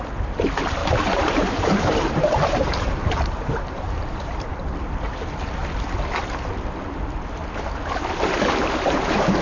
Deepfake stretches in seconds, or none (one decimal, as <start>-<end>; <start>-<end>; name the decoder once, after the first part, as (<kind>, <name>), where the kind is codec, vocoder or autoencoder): 0.8-4.5 (vocoder, BigVGAN v2)